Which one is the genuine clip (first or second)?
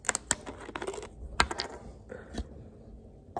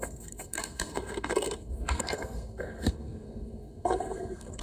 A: first